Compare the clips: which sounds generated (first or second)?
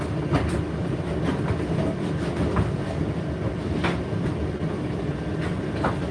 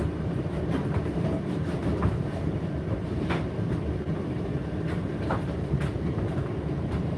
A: second